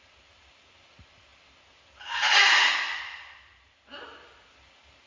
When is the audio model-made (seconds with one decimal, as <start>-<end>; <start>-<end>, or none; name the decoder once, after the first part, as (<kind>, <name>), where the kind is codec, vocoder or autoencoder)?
none